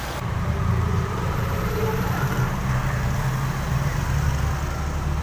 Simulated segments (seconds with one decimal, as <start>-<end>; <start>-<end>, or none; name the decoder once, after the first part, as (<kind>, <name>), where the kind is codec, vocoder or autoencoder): 0.0-2.8 (vocoder, BigVGAN v2)